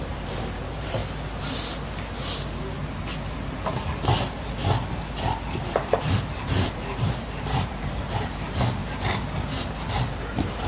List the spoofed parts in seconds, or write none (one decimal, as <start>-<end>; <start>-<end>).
0.0-1.0; 5.6-8.8; 9.9-10.7